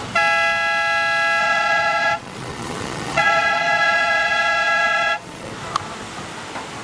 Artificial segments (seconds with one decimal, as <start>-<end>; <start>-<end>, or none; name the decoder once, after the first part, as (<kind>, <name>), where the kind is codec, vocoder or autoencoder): 1.4-5.5 (vocoder, Vocos)